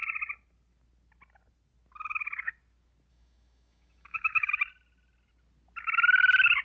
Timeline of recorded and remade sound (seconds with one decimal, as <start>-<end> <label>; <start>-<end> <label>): 0.0-3.1 recorded; 3.1-4.5 remade; 4.5-6.6 recorded